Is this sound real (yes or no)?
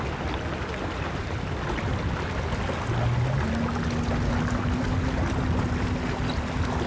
yes